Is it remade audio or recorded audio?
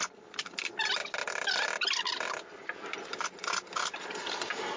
recorded